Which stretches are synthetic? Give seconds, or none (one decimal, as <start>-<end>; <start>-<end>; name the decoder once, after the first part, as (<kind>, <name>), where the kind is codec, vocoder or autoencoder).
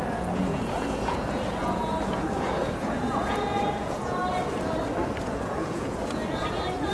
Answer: 0.0-4.2 (vocoder, Vocos); 5.2-6.9